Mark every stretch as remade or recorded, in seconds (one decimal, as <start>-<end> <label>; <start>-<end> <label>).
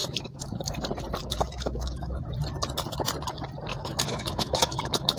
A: 0.0-0.7 remade; 0.7-1.2 recorded; 1.2-2.2 remade; 2.2-3.7 recorded; 3.7-5.2 remade